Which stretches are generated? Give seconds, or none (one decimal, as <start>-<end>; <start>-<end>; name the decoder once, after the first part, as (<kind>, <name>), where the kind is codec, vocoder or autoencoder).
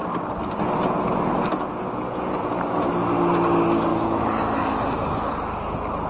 1.5-2.9 (vocoder, Vocos)